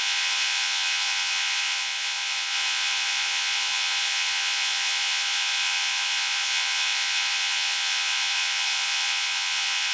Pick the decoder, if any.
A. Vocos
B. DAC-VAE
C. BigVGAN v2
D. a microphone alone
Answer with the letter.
A